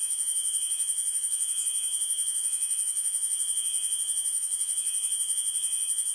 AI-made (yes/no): yes